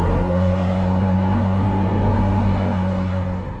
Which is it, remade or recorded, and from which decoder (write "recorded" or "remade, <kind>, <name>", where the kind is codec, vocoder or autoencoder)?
remade, codec, SNAC